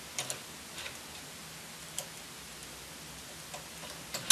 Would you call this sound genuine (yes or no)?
yes